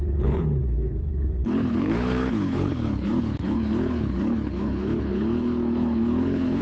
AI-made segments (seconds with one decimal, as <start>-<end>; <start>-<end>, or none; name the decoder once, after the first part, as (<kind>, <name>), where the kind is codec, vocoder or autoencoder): 0.0-6.6 (codec, HILCodec)